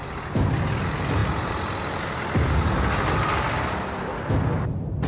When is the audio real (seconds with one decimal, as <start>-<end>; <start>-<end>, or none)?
0.0-5.1